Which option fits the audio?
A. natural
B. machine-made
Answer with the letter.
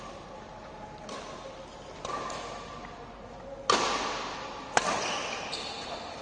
A